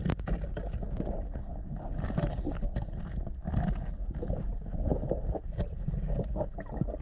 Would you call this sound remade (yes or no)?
no